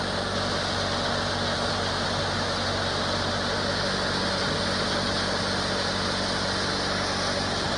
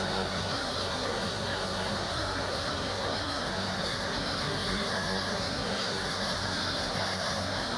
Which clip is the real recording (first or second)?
first